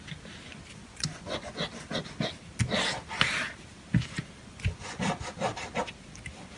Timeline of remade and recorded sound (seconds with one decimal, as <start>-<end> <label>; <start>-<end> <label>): 0.0-0.8 recorded; 0.8-1.5 remade; 1.5-4.4 recorded; 4.4-5.0 remade; 5.0-6.6 recorded

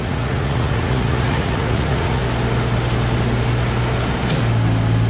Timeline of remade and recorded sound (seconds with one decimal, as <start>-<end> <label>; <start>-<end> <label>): 0.0-2.2 remade; 2.2-5.1 recorded

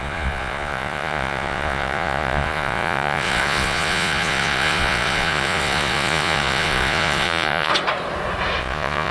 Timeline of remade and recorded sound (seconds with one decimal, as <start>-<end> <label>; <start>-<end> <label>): 0.0-7.7 remade; 7.7-8.6 recorded; 8.6-9.1 remade

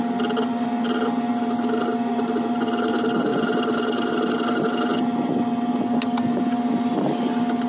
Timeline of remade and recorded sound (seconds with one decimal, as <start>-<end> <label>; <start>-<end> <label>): 0.0-7.7 recorded

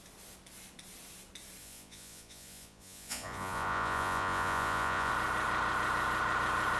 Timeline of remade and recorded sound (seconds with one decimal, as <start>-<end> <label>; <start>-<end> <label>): 0.0-1.6 recorded; 1.6-5.1 remade; 5.1-6.8 recorded

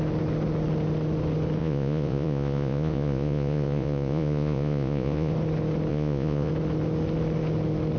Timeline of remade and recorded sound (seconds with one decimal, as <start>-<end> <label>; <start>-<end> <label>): 0.0-1.6 recorded; 1.6-5.3 remade; 5.3-5.9 recorded; 5.9-6.5 remade; 6.5-8.0 recorded

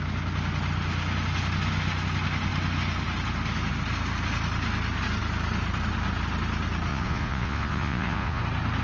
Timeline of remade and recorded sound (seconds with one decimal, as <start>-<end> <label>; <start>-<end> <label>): 0.0-6.9 recorded; 6.9-8.4 remade; 8.4-8.8 recorded

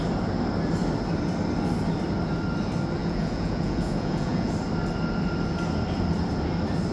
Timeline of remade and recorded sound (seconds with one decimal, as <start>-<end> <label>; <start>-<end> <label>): 0.0-3.0 recorded; 3.0-4.5 remade; 4.5-6.9 recorded